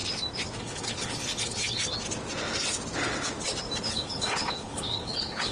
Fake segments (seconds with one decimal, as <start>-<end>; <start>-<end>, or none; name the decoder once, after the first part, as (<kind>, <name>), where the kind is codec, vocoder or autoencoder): 0.6-1.8 (codec, HILCodec); 3.9-5.5